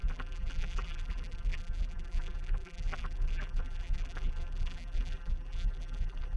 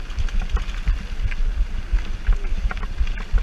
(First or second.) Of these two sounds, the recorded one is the second